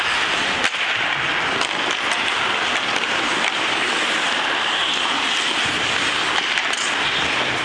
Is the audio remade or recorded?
recorded